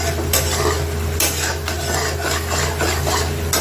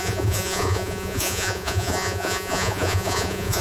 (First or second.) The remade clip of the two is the second